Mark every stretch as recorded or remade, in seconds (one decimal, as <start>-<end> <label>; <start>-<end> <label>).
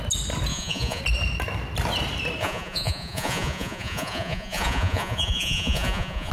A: 0.0-0.5 recorded; 0.5-1.0 remade; 1.0-2.4 recorded; 2.4-6.3 remade